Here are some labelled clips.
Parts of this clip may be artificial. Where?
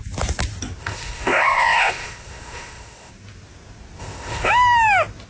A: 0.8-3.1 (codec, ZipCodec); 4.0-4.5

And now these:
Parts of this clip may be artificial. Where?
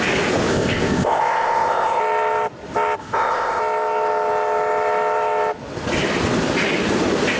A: 0.5-2.0 (codec, ZipCodec); 3.0-3.6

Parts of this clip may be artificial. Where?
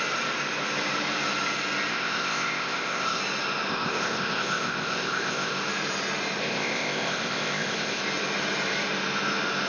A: 1.9-3.2 (codec, ZipCodec); 3.7-5.6; 6.4-8.0